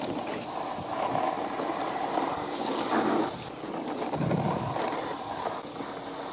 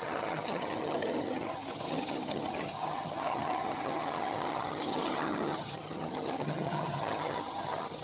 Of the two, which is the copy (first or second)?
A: second